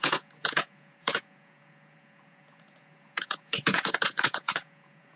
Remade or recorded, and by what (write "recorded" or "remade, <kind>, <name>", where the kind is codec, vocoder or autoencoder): remade, vocoder, Vocos